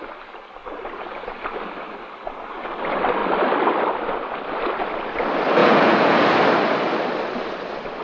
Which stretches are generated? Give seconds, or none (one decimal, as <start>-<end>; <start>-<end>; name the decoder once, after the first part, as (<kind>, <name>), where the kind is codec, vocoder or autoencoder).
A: 5.6-6.2 (vocoder, Vocos)